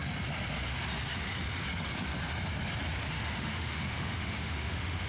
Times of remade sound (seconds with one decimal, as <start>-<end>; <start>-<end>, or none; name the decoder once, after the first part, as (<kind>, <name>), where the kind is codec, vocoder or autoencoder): 3.1-5.1 (autoencoder, DAC-VAE)